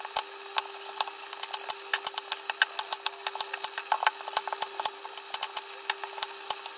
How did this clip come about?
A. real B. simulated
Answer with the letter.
A